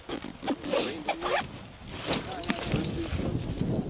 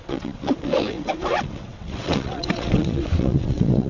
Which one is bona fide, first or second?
first